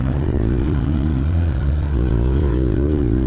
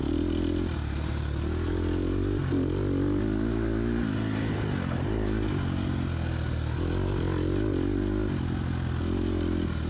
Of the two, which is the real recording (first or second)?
second